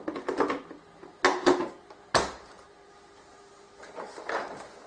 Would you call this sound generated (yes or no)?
no